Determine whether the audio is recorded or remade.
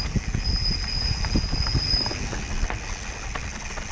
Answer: recorded